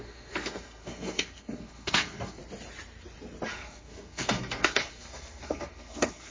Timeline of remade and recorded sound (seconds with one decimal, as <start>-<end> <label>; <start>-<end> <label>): 0.0-2.4 remade; 2.4-3.5 recorded; 3.5-6.3 remade